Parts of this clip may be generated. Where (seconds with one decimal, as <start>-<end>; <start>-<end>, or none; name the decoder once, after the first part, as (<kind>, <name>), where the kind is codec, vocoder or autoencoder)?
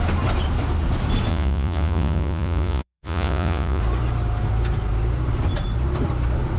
1.3-3.8 (vocoder, Vocos)